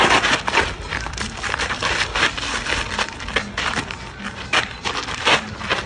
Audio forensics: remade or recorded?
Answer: recorded